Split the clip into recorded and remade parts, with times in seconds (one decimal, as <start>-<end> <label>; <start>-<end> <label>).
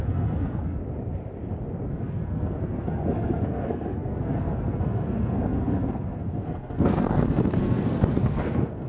0.0-0.8 remade; 0.8-1.9 recorded; 1.9-8.9 remade